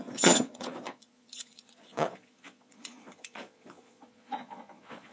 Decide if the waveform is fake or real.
fake